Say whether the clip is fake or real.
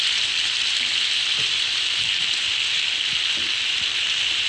real